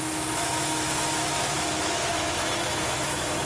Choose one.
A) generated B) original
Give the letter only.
A